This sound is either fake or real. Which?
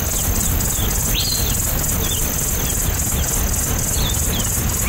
real